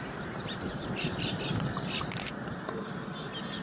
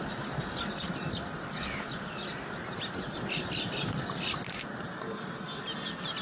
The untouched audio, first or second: second